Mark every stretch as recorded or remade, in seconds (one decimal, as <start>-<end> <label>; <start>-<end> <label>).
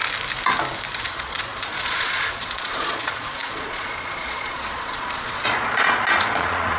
0.0-1.0 recorded; 1.0-6.8 remade